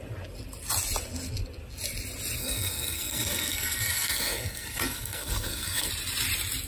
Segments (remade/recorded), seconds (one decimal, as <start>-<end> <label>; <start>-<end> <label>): 0.0-2.4 recorded; 2.4-5.9 remade; 5.9-6.7 recorded